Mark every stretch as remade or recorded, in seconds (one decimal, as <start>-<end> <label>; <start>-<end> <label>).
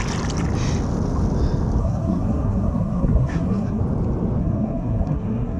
0.0-1.8 recorded; 1.8-3.8 remade; 3.8-4.4 recorded; 4.4-5.6 remade